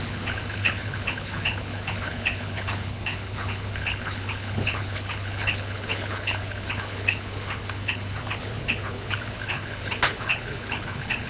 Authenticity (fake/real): fake